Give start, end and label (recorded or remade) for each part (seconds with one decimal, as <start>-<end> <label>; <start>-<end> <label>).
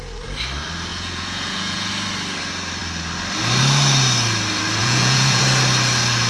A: 0.0-0.9 recorded; 0.9-1.9 remade; 1.9-4.8 recorded; 4.8-5.4 remade; 5.4-6.3 recorded